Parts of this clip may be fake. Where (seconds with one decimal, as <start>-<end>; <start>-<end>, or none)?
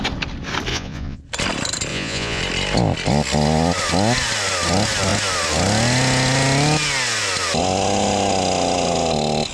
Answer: 0.7-1.2; 1.9-2.4